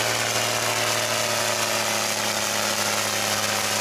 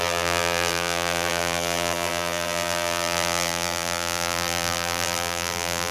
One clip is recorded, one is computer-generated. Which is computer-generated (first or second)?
second